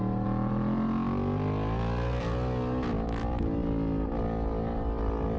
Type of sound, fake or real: real